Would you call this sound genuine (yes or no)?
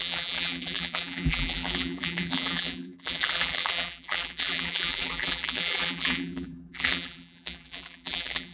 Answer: no